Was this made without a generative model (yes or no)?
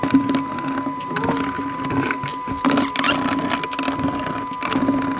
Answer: yes